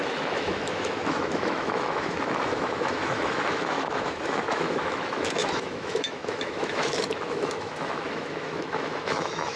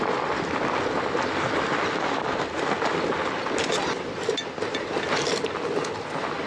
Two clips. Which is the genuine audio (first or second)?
second